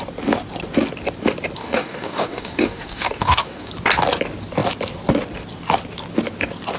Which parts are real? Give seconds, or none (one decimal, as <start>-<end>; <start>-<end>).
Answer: 0.0-1.6; 3.7-6.8